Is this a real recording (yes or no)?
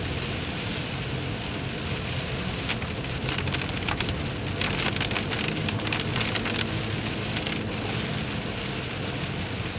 yes